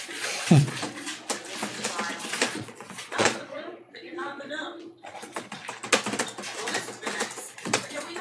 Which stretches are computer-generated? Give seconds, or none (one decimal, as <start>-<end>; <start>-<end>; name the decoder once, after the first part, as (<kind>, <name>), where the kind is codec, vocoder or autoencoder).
0.0-1.1 (vocoder, Vocos); 2.2-5.6; 7.4-8.2